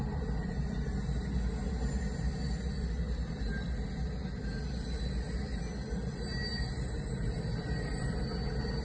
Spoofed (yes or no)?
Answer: no